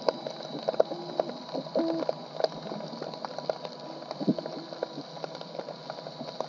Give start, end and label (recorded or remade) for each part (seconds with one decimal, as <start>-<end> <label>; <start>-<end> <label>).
0.0-6.5 recorded